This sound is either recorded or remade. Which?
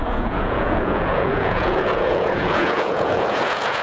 remade